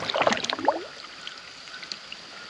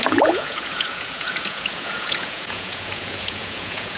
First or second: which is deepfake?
second